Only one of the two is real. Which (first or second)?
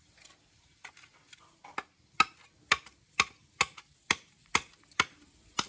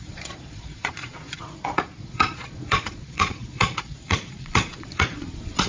first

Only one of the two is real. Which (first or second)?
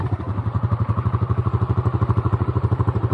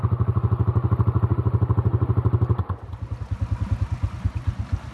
second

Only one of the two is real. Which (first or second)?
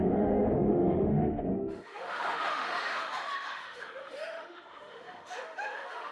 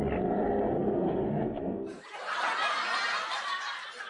second